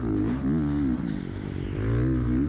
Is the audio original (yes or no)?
yes